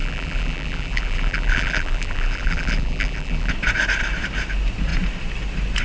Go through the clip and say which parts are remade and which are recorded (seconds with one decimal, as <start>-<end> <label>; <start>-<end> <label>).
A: 0.0-3.5 remade; 3.5-5.8 recorded